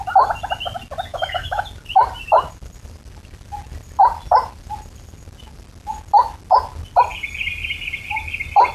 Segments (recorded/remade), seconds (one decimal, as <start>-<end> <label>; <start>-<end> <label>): 0.0-1.1 recorded; 1.1-1.6 remade; 1.6-8.7 recorded